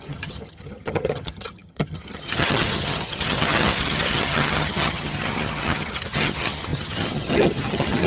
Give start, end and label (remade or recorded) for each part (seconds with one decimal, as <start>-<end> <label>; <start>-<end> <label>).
0.0-8.1 remade